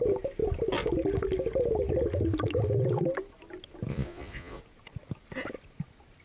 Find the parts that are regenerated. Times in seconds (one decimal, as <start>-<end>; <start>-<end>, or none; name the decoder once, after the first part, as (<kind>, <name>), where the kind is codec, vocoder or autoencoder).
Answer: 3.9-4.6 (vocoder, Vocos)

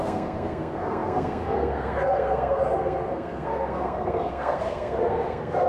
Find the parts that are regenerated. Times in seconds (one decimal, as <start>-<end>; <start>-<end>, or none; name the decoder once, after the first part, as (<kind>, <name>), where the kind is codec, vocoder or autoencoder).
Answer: 0.0-5.7 (codec, SNAC)

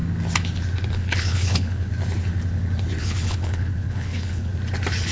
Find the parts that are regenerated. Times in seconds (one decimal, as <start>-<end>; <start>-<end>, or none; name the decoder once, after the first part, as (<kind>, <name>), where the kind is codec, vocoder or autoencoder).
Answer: 0.9-1.9 (codec, HILCodec); 3.0-4.5

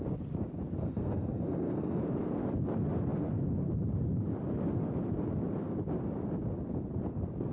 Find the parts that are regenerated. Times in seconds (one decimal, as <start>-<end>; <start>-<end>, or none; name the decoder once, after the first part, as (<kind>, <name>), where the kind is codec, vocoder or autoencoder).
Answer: 0.8-2.0 (codec, SNAC)